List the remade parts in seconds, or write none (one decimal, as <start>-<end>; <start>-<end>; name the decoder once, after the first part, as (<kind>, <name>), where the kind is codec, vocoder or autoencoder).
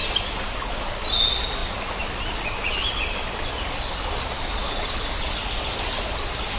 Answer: none